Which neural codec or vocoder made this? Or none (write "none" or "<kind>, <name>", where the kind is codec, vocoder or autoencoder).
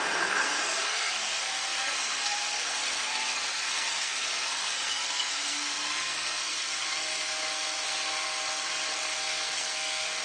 codec, SNAC